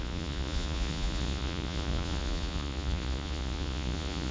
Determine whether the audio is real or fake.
fake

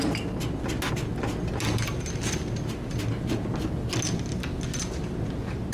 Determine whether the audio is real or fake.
real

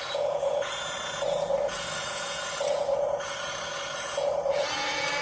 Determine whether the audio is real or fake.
fake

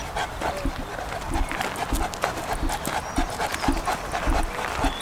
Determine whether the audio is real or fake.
real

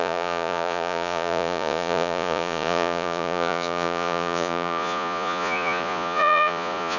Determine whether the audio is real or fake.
fake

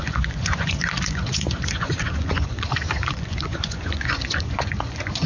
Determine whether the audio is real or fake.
fake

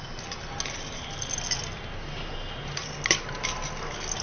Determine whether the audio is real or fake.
real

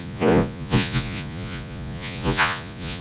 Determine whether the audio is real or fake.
fake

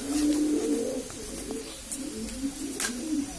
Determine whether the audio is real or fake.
real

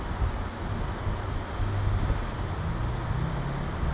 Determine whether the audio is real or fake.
real